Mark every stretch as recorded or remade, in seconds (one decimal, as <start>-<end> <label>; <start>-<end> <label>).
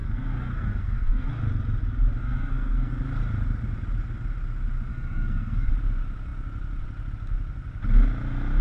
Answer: 0.0-1.3 remade; 1.3-2.2 recorded; 2.2-2.9 remade; 2.9-4.9 recorded; 4.9-5.7 remade; 5.7-8.6 recorded